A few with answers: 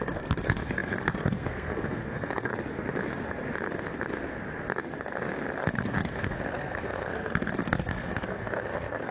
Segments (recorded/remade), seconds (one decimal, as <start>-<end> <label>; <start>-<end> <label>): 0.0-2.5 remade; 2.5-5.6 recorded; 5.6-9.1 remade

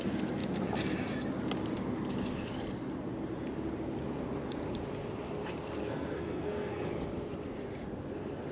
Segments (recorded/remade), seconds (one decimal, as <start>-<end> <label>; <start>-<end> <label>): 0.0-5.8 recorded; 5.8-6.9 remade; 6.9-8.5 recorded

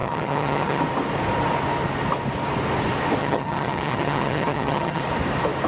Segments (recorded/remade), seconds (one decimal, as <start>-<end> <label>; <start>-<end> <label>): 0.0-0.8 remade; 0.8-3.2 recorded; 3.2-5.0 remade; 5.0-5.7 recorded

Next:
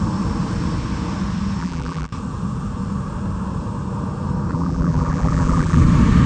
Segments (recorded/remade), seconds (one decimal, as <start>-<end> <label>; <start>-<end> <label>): 0.0-1.6 recorded; 1.6-2.1 remade; 2.1-4.5 recorded; 4.5-5.8 remade; 5.8-6.3 recorded

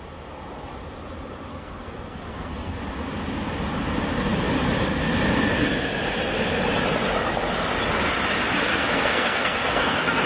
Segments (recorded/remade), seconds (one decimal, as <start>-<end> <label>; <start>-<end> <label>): 0.0-1.5 recorded; 1.5-2.8 remade; 2.8-8.7 recorded; 8.7-10.3 remade

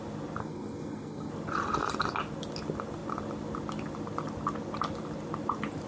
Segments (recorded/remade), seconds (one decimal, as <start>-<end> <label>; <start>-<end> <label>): 0.0-0.4 recorded; 0.4-1.3 remade; 1.3-5.9 recorded

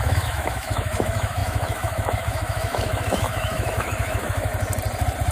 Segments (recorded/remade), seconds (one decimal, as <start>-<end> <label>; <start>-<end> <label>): 0.0-4.5 remade; 4.5-5.3 recorded

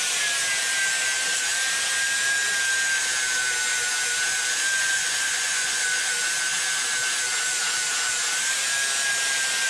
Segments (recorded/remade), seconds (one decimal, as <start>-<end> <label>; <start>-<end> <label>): 0.0-4.7 recorded; 4.7-6.1 remade; 6.1-9.7 recorded